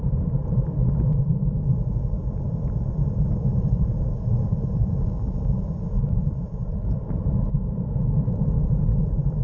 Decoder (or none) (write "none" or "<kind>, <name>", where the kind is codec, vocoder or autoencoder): vocoder, BigVGAN v2